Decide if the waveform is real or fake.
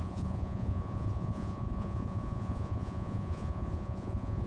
fake